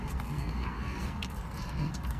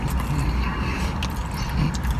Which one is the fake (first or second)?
first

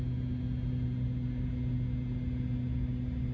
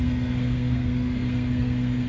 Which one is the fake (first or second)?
second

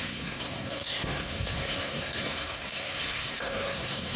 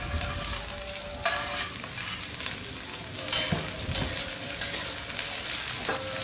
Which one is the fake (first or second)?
first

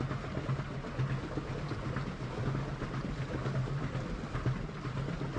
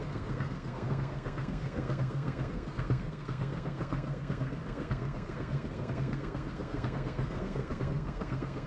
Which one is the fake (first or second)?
second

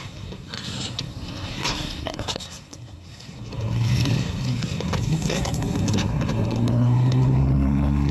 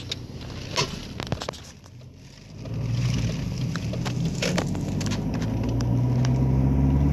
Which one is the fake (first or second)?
first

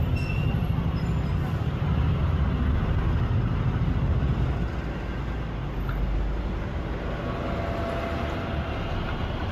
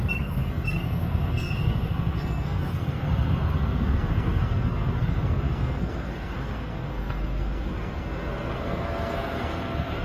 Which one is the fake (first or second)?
second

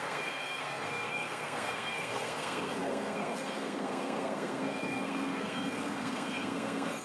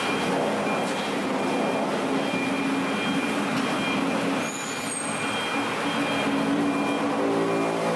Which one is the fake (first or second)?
first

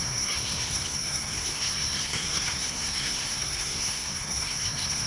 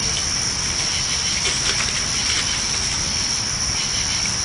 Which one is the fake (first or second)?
first